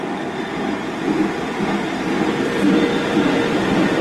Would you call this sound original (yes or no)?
yes